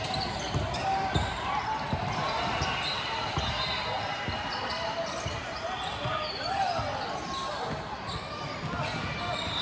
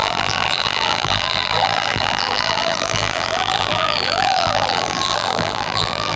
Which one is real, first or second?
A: first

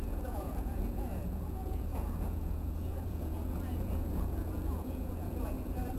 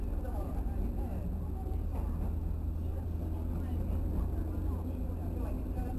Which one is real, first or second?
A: second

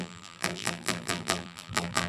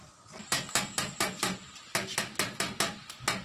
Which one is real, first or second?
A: second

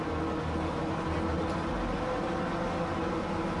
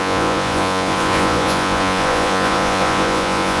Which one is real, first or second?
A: first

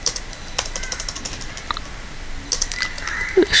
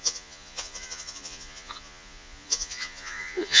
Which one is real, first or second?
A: first